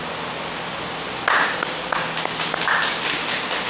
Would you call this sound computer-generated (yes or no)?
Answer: no